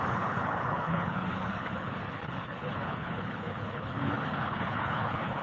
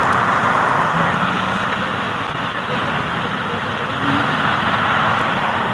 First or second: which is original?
second